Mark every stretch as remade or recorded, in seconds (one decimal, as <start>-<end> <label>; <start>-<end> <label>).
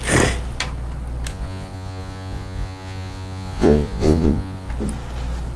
0.0-1.3 recorded; 1.3-4.7 remade; 4.7-5.6 recorded